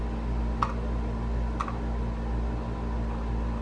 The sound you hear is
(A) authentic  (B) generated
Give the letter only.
A